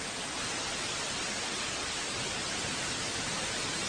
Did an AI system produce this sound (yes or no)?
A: no